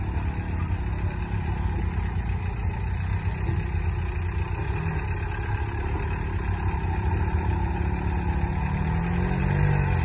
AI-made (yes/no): no